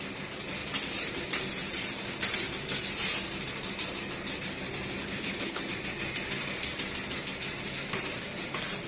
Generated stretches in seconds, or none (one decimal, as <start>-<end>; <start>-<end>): 5.0-5.6